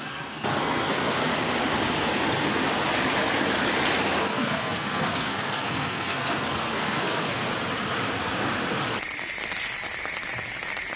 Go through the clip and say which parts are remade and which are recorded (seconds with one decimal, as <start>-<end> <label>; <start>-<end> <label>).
0.0-1.3 remade; 1.3-4.2 recorded; 4.2-7.4 remade; 7.4-11.0 recorded